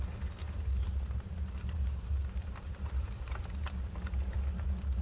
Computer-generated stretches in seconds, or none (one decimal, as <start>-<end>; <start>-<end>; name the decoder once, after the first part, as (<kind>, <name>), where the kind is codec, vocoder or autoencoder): 0.4-3.4 (vocoder, BigVGAN v2)